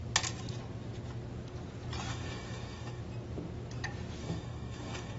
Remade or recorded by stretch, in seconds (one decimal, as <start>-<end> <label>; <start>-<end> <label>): 0.0-2.1 recorded; 2.1-3.0 remade; 3.0-4.2 recorded; 4.2-5.2 remade